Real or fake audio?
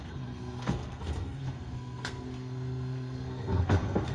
fake